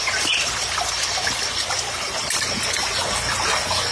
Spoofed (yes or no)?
no